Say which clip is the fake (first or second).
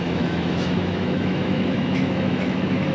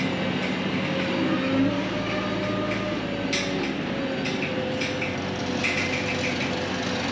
first